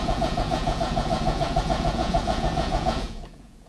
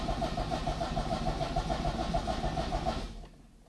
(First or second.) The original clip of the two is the second